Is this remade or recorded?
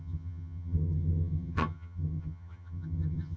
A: remade